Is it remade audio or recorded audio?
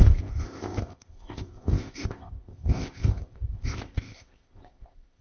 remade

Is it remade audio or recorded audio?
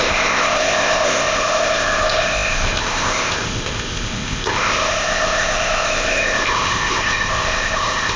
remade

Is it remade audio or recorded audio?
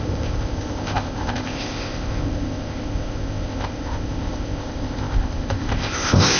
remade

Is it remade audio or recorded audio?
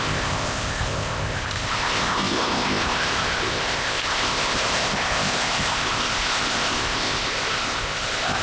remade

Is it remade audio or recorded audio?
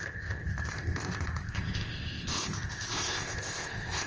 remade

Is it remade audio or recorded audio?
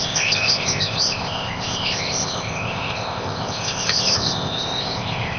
remade